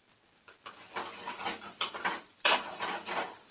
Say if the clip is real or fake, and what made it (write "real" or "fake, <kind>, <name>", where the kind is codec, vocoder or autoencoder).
real